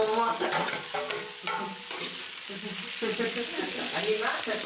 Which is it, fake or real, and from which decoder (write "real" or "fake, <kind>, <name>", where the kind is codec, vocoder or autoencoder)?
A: real